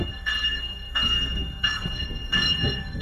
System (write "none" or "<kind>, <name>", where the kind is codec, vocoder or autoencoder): codec, SNAC